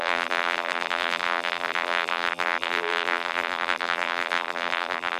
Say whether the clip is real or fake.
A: fake